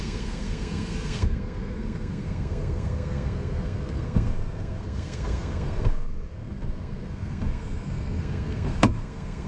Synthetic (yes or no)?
yes